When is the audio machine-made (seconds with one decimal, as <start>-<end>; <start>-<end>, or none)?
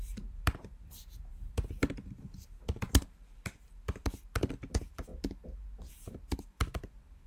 0.0-5.1; 5.9-7.3